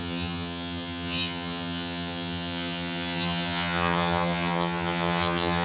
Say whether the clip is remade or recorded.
remade